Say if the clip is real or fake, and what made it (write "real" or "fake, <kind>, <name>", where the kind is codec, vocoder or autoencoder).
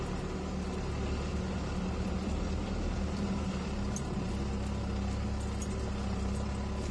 real